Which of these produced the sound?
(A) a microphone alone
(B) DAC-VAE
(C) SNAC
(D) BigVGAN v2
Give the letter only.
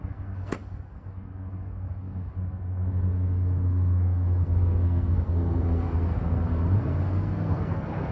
C